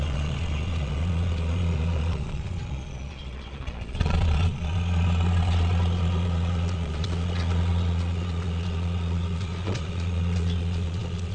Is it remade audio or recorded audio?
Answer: remade